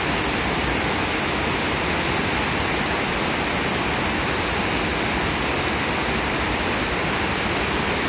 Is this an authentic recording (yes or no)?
yes